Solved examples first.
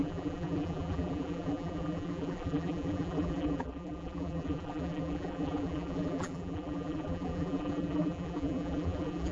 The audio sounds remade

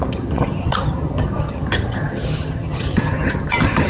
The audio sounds remade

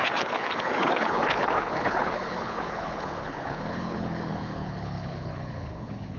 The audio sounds remade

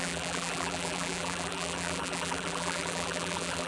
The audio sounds remade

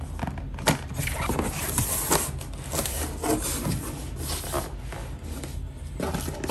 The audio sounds recorded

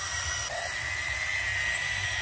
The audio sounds recorded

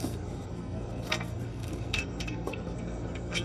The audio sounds remade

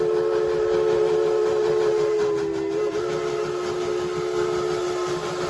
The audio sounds recorded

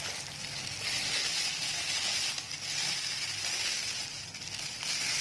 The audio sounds recorded